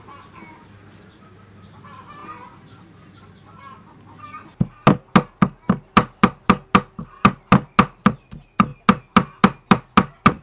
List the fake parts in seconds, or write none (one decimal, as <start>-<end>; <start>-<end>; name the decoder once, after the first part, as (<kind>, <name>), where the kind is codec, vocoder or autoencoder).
none

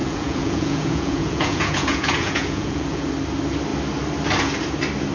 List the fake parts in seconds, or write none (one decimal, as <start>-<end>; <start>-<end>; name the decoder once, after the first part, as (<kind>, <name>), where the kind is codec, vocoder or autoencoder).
0.0-3.1 (vocoder, Vocos)

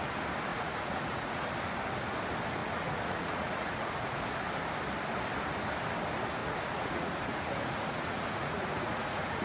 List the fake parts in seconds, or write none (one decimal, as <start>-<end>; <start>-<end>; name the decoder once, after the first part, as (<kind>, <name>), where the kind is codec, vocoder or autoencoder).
0.5-1.5 (vocoder, Vocos); 2.6-4.2; 6.4-9.4

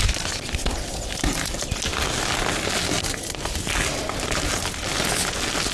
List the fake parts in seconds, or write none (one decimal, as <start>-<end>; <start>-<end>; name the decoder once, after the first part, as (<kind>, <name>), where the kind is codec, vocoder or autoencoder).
none

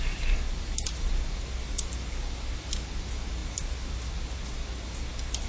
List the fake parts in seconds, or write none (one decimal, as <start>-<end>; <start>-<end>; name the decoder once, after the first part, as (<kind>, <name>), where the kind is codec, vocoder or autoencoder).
none

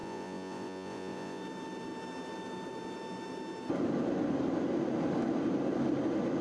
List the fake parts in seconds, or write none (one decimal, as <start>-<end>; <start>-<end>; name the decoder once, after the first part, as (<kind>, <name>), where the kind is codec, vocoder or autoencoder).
0.0-1.4 (vocoder, Vocos)

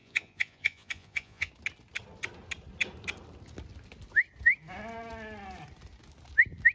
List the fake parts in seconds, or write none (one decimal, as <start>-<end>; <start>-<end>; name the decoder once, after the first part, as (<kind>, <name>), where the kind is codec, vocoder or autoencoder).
0.0-1.5 (vocoder, Vocos)

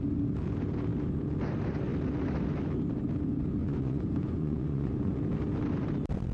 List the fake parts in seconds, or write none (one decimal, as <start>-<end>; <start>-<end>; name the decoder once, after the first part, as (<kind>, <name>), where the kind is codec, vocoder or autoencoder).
3.6-5.2 (vocoder, Vocos)